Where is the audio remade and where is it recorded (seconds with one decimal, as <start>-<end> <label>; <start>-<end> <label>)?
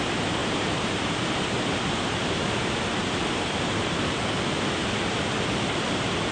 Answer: 0.0-0.4 recorded; 0.4-4.2 remade; 4.2-6.3 recorded